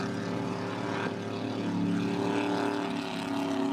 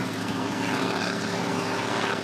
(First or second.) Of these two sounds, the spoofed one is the second